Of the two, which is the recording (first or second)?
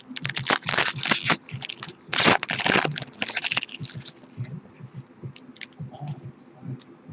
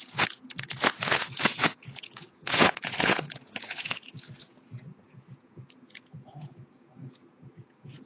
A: first